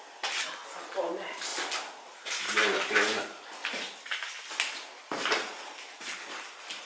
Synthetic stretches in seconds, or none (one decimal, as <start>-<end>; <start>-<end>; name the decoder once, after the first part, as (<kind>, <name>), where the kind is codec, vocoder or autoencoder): none

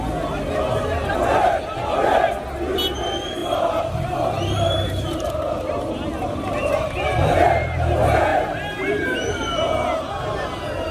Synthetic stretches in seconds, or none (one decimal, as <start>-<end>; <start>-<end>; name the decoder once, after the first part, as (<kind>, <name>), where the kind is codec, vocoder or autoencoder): 3.4-5.3 (vocoder, BigVGAN v2); 8.3-10.1

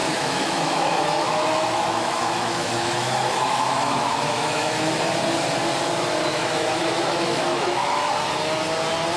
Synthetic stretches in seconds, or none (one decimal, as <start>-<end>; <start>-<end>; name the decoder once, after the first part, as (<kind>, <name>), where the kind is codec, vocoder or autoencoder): 0.0-4.9 (autoencoder, DAC-VAE); 6.3-8.1

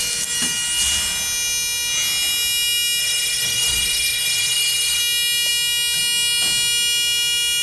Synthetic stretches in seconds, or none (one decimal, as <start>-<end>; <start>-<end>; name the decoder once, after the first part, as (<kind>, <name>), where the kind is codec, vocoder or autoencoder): 3.0-5.0 (autoencoder, DAC-VAE)

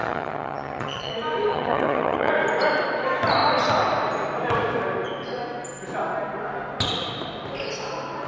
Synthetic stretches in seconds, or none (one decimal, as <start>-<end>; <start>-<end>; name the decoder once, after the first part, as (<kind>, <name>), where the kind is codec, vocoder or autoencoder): 0.0-1.1 (vocoder, HiFi-GAN); 1.5-2.3

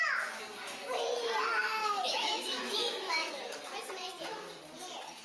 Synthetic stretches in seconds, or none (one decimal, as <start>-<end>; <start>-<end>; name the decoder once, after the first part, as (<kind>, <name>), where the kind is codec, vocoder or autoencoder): 1.8-3.4 (autoencoder, DAC-VAE)